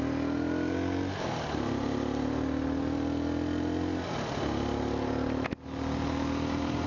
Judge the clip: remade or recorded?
recorded